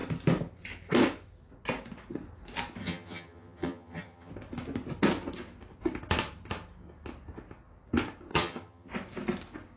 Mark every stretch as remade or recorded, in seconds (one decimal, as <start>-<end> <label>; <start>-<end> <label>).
0.0-2.8 recorded; 2.8-4.3 remade; 4.3-8.3 recorded; 8.3-8.9 remade; 8.9-9.8 recorded